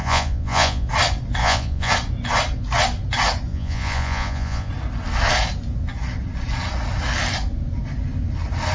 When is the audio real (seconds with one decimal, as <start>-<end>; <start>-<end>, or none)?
0.9-1.4; 1.9-3.5; 4.7-8.7